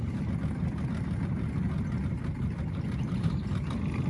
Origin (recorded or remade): recorded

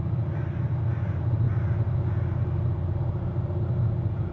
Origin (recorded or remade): recorded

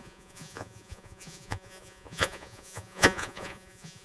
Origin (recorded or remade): remade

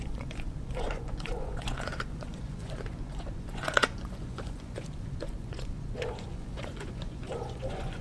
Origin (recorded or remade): remade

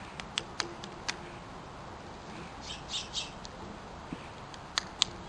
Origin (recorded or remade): recorded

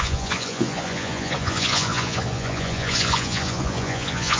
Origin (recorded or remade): remade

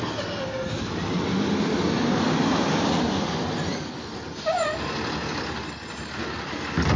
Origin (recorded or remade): recorded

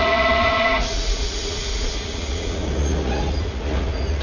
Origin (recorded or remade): remade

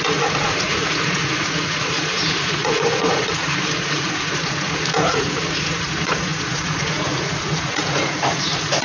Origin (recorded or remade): remade